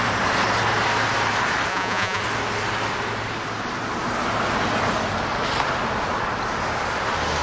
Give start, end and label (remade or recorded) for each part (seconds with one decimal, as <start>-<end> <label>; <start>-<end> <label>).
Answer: 0.0-1.7 recorded; 1.7-2.2 remade; 2.2-7.4 recorded

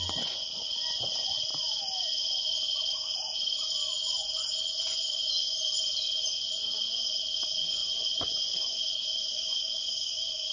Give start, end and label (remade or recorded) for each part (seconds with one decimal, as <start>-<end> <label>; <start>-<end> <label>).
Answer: 0.0-1.5 remade; 1.5-3.7 recorded; 3.7-10.5 remade

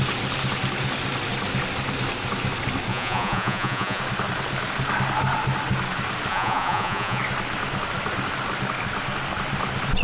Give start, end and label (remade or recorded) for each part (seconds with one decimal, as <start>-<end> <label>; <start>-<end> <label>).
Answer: 0.0-2.9 recorded; 2.9-4.0 remade; 4.0-6.3 recorded; 6.3-7.2 remade; 7.2-10.0 recorded

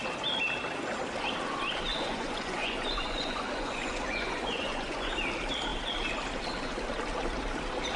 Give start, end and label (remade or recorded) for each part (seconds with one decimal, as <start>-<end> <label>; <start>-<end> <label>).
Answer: 0.0-1.9 recorded; 1.9-5.1 remade; 5.1-8.0 recorded

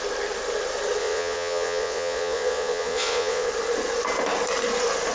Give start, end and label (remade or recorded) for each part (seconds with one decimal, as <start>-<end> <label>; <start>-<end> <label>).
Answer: 0.0-1.0 recorded; 1.0-3.5 remade; 3.5-5.1 recorded